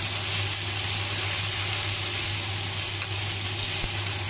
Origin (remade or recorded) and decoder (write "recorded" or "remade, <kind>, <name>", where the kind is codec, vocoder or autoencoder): recorded